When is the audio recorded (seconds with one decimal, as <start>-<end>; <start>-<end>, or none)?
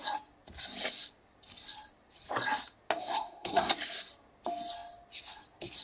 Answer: 0.0-3.0; 3.7-5.8